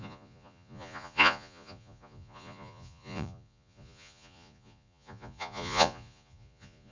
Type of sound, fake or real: fake